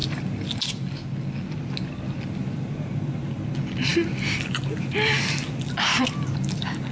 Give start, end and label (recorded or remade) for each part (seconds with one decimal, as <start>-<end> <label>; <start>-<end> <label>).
0.0-6.9 recorded